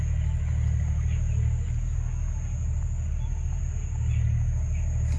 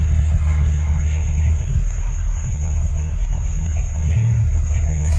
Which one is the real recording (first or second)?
first